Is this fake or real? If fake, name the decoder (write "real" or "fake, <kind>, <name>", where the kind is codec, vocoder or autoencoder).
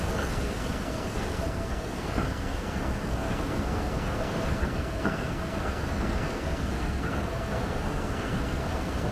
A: fake, codec, SNAC